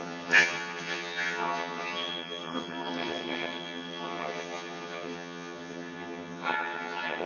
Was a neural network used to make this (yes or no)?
yes